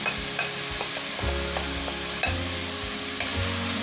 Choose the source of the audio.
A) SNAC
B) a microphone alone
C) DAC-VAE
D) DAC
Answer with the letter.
B